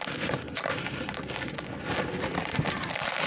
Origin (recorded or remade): recorded